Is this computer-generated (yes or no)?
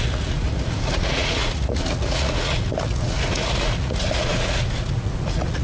yes